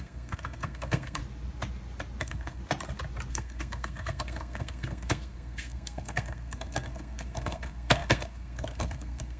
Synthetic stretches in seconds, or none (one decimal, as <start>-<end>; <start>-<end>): 0.0-1.2; 2.2-2.6; 3.3-9.4